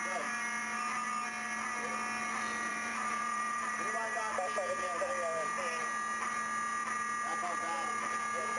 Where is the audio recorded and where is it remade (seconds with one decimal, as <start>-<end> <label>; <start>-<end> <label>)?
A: 0.0-2.7 recorded; 2.7-4.2 remade; 4.2-8.6 recorded